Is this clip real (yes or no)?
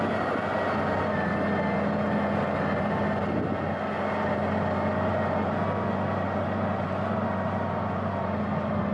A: yes